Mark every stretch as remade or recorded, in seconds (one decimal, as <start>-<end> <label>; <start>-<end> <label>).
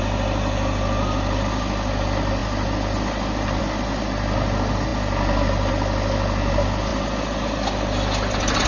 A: 0.0-8.7 recorded